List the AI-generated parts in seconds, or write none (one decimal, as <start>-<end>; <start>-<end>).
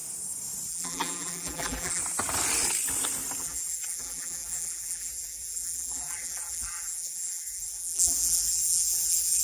0.7-2.0; 3.4-9.4